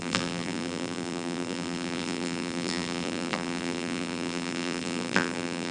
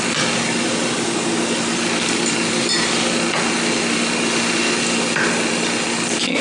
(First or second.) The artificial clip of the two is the first